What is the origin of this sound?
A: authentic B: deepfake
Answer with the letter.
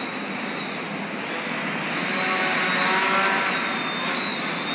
A